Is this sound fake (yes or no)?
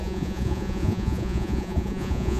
yes